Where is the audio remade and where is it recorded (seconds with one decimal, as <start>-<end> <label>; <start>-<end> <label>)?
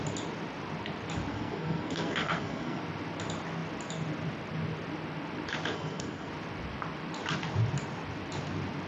0.0-1.3 recorded; 1.3-2.8 remade; 2.8-5.7 recorded; 5.7-6.3 remade; 6.3-8.9 recorded